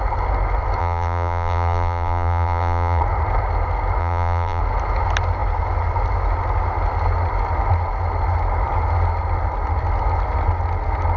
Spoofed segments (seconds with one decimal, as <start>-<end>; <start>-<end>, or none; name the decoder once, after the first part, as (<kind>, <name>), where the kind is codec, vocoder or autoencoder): 0.8-3.0 (vocoder, BigVGAN v2); 4.0-4.6